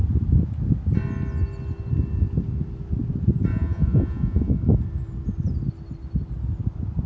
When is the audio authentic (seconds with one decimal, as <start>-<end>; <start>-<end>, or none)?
0.0-3.5; 4.5-7.1